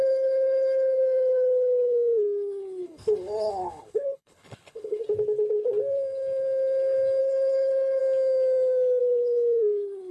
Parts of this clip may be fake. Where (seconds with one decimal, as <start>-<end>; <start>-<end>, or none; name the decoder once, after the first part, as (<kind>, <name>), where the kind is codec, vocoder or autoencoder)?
0.0-5.0 (codec, HILCodec); 7.2-8.0; 9.0-10.1